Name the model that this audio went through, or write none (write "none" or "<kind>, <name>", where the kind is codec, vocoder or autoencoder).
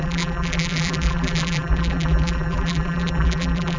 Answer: vocoder, BigVGAN v2